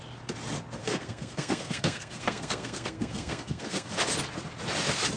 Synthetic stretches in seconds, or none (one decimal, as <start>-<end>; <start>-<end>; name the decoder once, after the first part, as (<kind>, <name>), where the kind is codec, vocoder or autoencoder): 0.8-3.9 (codec, SNAC)